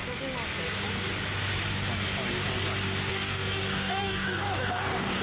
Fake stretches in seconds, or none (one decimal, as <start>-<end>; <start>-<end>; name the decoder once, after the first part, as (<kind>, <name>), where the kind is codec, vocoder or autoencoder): 3.1-5.2 (codec, DAC)